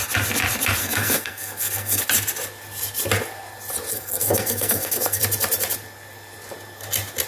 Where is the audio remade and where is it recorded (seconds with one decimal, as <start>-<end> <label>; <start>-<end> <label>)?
0.0-0.8 recorded; 0.8-2.0 remade; 2.0-3.9 recorded; 3.9-5.2 remade; 5.2-7.3 recorded